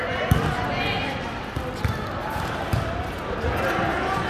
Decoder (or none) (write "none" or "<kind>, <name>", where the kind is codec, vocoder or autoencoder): none